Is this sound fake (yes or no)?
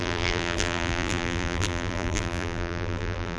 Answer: yes